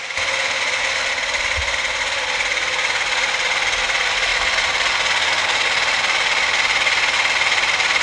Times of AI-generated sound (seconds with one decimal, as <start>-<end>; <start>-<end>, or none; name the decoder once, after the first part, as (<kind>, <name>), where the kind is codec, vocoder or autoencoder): none